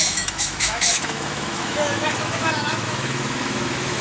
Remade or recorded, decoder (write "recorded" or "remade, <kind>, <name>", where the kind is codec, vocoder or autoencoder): remade, autoencoder, DAC-VAE